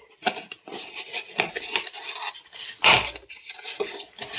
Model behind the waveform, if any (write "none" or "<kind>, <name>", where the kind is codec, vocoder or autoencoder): none